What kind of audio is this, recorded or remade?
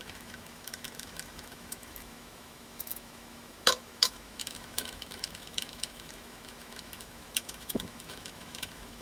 remade